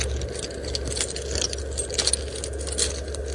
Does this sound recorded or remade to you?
recorded